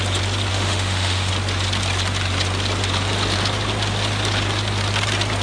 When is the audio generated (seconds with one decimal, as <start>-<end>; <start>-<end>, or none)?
0.5-1.3